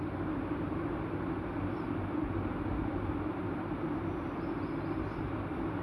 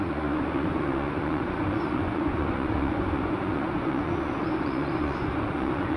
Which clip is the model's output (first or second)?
second